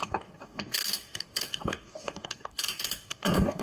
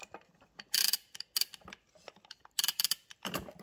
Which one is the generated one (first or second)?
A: first